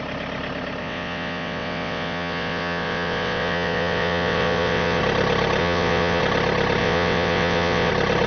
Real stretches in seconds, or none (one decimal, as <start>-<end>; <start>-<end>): 0.0-0.8; 5.0-5.6; 6.2-6.8; 7.9-8.3